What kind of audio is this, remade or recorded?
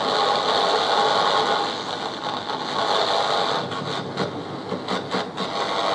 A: recorded